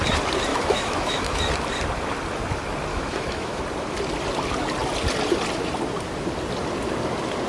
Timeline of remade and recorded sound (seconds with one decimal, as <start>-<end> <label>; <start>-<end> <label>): 0.0-0.5 recorded; 0.5-1.4 remade; 1.4-2.9 recorded; 2.9-3.6 remade; 3.6-7.5 recorded